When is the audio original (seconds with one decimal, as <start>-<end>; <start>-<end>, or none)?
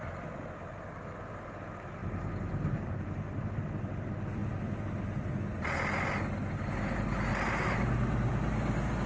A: 0.0-9.1